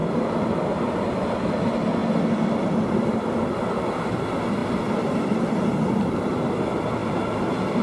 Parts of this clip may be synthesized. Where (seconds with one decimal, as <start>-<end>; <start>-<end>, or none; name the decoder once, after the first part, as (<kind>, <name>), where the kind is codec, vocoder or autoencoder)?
4.6-5.5 (vocoder, BigVGAN v2); 7.0-7.8